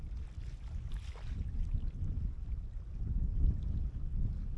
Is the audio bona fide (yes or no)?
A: yes